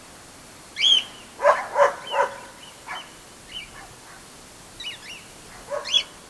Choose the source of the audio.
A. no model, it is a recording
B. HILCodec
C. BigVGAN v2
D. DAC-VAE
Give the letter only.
A